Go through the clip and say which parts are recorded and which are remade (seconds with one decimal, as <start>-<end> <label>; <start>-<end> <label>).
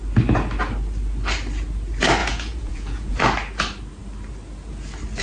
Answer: 0.0-2.2 recorded; 2.2-3.2 remade; 3.2-5.2 recorded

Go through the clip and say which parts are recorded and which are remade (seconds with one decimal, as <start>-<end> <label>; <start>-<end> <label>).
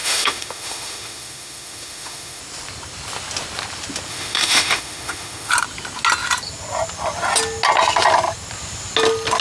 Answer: 0.0-2.4 remade; 2.4-4.1 recorded; 4.1-5.5 remade; 5.5-9.4 recorded